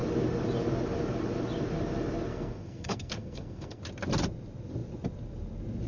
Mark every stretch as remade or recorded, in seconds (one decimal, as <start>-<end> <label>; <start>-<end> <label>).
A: 0.0-2.3 recorded; 2.3-3.8 remade; 3.8-5.9 recorded